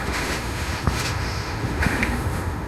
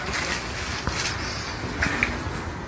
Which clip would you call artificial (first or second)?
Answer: first